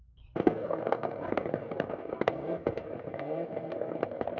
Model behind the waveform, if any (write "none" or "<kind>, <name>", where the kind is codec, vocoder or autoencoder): codec, SNAC